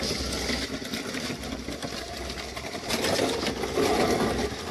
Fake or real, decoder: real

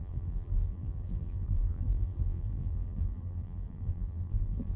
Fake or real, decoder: fake, vocoder, BigVGAN v2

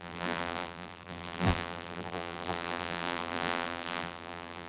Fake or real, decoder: fake, vocoder, BigVGAN v2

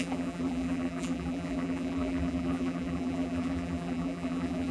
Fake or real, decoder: fake, vocoder, BigVGAN v2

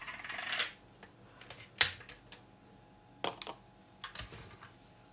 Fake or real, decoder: real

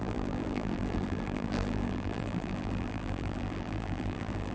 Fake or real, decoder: fake, vocoder, BigVGAN v2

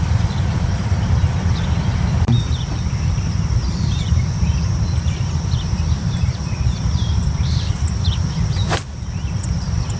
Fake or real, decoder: fake, vocoder, BigVGAN v2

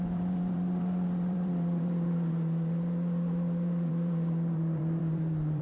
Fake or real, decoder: fake, vocoder, BigVGAN v2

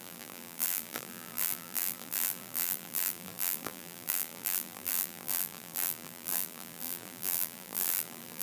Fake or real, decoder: fake, vocoder, BigVGAN v2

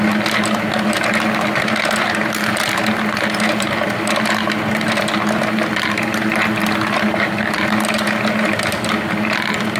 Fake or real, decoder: real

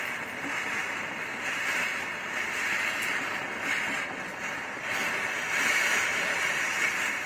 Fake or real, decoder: real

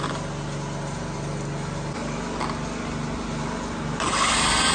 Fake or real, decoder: real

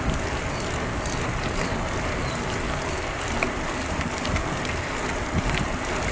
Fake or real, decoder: real